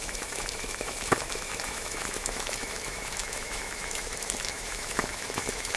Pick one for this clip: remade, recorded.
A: remade